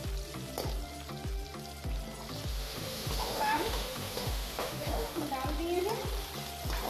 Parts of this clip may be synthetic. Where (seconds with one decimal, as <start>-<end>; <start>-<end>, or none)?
2.5-5.2